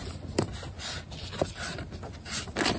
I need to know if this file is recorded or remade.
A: recorded